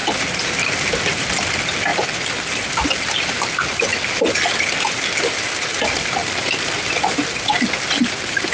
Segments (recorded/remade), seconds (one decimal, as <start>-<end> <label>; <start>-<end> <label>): 0.0-0.8 remade; 0.8-6.2 recorded; 6.2-8.5 remade